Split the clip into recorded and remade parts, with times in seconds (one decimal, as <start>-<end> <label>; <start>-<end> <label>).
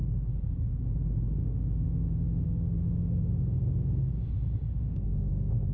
0.0-1.4 recorded; 1.4-3.3 remade; 3.3-4.7 recorded; 4.7-5.3 remade; 5.3-5.7 recorded